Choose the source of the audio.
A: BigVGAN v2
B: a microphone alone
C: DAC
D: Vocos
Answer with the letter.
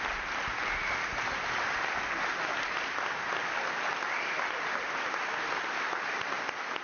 B